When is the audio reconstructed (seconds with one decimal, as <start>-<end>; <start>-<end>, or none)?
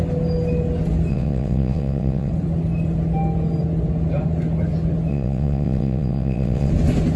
1.1-2.3; 5.1-6.7